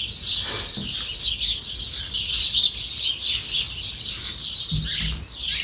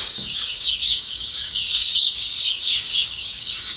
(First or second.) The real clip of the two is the first